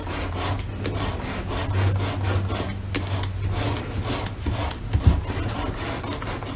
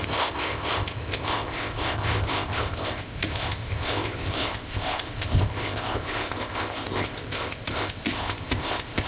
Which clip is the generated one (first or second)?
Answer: second